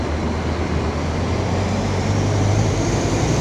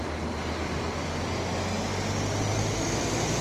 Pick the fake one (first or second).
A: first